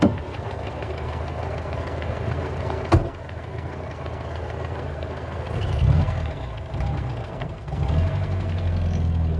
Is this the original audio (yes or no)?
no